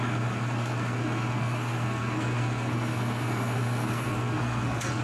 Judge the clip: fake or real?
fake